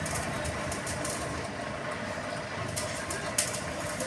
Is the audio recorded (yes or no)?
yes